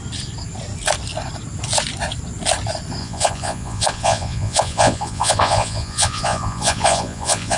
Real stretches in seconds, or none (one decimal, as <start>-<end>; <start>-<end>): 0.0-3.0